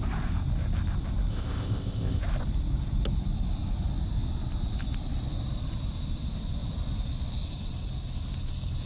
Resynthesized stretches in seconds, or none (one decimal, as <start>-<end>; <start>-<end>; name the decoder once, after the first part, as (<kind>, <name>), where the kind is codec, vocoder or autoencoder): 1.3-2.2 (codec, ZipCodec)